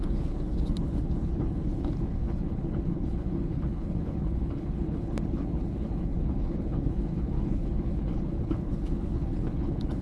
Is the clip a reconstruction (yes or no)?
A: yes